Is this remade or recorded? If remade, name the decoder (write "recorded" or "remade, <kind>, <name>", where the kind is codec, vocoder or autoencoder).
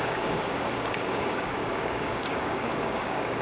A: remade, codec, DAC